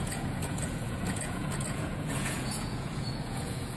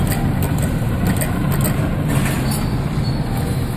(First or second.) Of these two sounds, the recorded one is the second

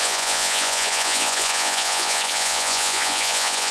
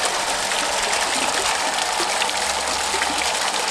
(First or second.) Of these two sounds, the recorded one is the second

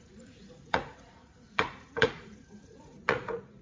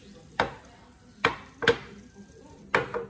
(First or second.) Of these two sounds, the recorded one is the second